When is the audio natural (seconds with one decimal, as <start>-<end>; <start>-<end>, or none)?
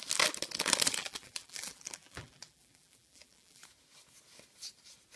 0.0-1.0; 3.6-5.2